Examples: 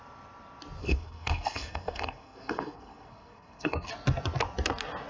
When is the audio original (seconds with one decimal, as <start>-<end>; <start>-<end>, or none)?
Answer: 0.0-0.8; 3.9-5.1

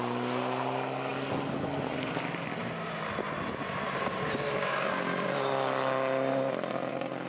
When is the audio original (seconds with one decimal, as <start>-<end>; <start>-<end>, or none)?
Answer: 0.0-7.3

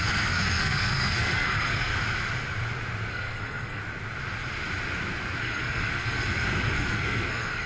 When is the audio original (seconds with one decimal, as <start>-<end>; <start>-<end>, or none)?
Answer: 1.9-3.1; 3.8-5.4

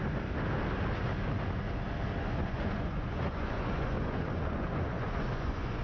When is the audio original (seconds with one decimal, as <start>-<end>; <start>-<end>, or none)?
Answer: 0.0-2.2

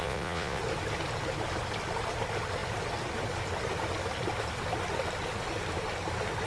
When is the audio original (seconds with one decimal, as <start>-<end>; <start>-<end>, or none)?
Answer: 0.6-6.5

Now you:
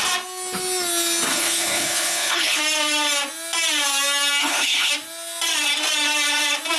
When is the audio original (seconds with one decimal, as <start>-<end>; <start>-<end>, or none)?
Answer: 0.0-1.3; 2.6-4.4; 4.9-6.8

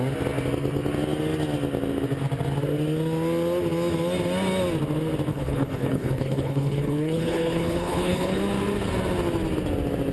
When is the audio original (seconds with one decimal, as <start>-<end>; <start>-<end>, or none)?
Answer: 0.0-5.3; 8.4-10.1